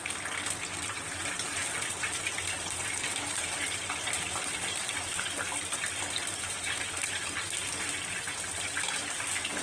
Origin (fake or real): real